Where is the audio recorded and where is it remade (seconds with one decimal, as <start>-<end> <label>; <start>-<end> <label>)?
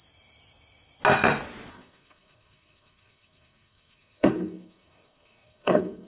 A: 0.0-1.7 recorded; 1.7-6.1 remade